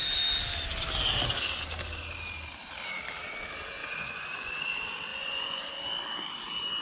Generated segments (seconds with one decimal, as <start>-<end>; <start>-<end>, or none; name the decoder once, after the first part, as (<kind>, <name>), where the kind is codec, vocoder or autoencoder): 3.8-4.5 (vocoder, Vocos); 5.1-5.7